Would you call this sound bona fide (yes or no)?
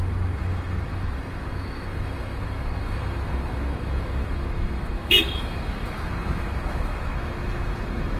no